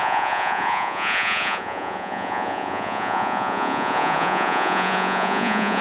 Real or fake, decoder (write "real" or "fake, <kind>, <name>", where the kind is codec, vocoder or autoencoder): fake, vocoder, Vocos